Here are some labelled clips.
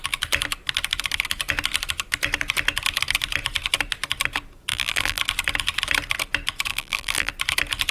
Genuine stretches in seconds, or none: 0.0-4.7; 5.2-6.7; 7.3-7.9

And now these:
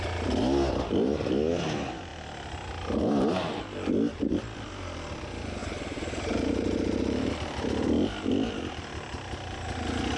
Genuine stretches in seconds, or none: 0.0-5.6; 7.3-10.2

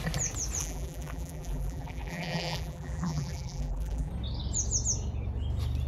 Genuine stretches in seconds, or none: 0.0-0.6; 4.1-5.9